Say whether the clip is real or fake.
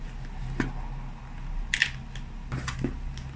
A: real